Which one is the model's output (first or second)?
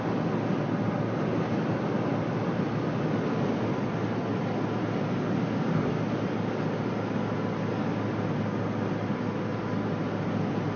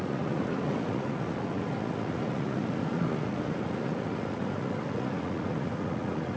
second